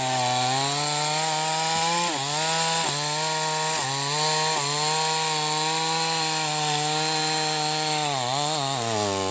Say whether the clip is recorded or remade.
recorded